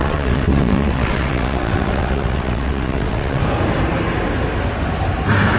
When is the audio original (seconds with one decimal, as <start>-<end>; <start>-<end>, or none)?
3.4-5.6